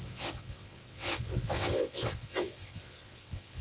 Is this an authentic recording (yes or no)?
no